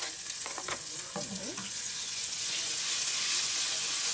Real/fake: fake